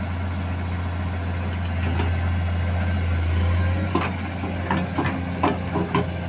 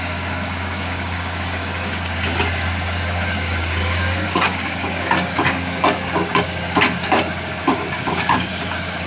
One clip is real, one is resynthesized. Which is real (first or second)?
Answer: first